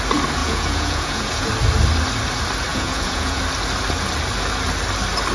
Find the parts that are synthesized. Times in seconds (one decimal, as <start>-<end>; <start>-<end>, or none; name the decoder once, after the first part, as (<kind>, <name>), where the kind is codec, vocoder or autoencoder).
0.4-1.5 (vocoder, Vocos); 2.7-3.4